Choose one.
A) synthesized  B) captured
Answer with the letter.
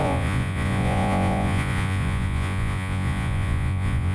A